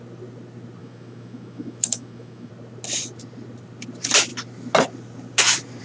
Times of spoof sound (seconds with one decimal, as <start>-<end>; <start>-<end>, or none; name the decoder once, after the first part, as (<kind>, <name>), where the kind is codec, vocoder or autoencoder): 0.8-2.5 (autoencoder, DAC-VAE)